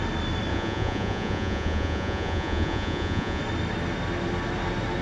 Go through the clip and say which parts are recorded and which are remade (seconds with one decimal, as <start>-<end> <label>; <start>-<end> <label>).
0.0-0.5 recorded; 0.5-3.4 remade; 3.4-5.0 recorded